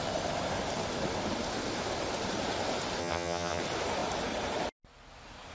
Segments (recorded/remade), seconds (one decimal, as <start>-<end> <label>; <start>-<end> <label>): 0.0-3.0 recorded; 3.0-3.6 remade; 3.6-5.5 recorded